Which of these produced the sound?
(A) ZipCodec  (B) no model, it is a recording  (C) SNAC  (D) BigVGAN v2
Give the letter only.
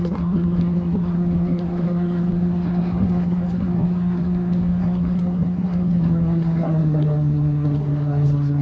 C